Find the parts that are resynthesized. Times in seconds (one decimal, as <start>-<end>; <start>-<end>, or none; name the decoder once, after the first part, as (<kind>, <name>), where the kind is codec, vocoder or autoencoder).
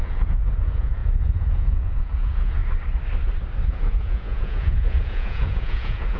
0.0-2.6 (vocoder, Vocos); 3.7-6.2